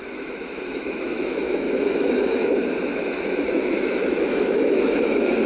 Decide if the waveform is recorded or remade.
remade